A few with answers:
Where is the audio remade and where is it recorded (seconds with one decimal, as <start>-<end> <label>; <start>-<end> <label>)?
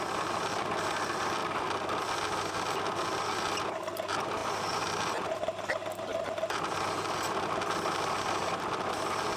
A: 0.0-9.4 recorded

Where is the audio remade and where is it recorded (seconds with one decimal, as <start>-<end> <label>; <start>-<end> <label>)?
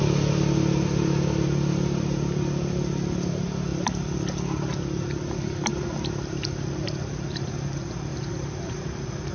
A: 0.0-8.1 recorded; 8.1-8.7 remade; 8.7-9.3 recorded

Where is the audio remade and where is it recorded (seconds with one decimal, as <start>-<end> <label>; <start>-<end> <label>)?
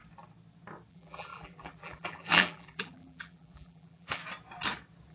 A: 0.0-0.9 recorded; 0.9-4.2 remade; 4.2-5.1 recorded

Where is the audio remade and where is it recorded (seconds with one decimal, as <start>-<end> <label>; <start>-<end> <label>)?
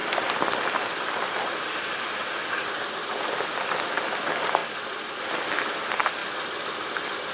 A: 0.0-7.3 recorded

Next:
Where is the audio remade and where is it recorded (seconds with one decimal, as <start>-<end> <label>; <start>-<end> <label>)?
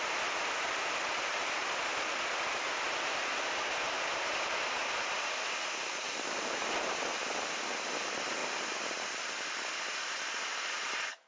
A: 0.0-5.8 recorded; 5.8-7.3 remade; 7.3-11.3 recorded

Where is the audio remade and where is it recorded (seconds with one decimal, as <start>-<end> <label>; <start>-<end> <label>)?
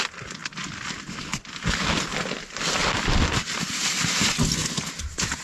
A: 0.0-2.8 recorded; 2.8-4.0 remade; 4.0-5.4 recorded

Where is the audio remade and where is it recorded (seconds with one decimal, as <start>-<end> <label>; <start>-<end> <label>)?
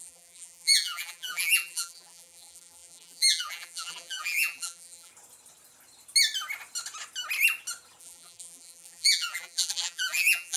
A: 0.0-5.1 remade; 5.1-8.0 recorded; 8.0-10.6 remade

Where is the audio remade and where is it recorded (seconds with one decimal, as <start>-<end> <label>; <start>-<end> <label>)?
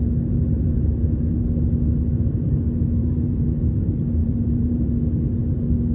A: 0.0-3.0 recorded; 3.0-3.6 remade; 3.6-4.2 recorded; 4.2-4.9 remade; 4.9-5.9 recorded